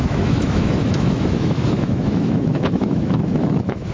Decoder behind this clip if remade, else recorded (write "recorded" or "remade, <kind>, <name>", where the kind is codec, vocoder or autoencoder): remade, autoencoder, DAC-VAE